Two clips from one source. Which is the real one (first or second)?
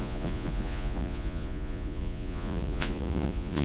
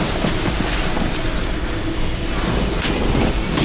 second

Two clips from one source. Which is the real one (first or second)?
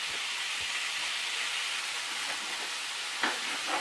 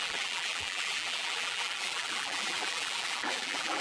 first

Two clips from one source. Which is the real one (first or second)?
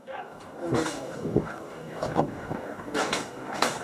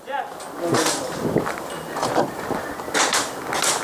second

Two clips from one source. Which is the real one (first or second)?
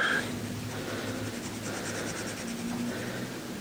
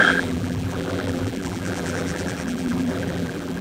first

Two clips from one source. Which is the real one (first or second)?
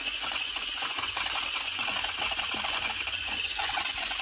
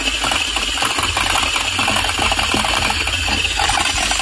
second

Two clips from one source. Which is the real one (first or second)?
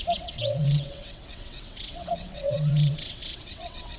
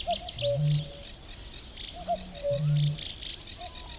second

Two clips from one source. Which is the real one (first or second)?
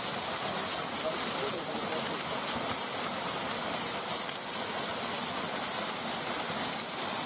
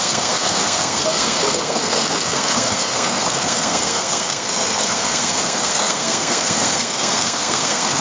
first